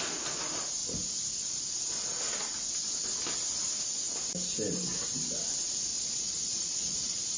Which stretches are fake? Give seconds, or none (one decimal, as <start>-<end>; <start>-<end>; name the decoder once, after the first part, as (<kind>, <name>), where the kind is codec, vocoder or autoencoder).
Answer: 5.9-7.4 (vocoder, Vocos)